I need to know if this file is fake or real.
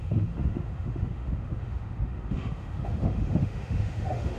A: fake